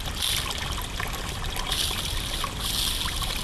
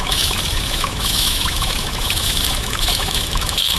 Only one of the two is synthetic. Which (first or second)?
second